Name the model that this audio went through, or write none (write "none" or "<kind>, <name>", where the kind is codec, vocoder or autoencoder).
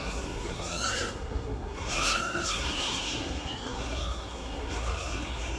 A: codec, SNAC